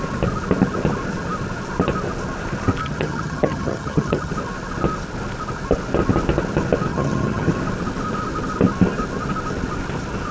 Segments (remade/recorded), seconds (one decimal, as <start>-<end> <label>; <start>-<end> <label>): 0.0-2.8 recorded; 2.8-4.3 remade; 4.3-6.9 recorded; 6.9-7.5 remade; 7.5-10.3 recorded